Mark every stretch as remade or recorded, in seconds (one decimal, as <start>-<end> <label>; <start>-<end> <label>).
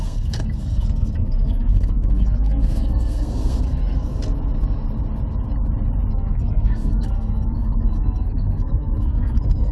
0.0-4.1 remade; 4.1-6.1 recorded; 6.1-9.7 remade